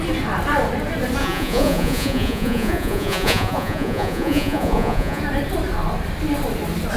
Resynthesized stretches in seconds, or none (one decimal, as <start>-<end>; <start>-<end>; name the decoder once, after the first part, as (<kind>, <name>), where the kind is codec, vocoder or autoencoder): 1.2-5.2 (vocoder, Vocos)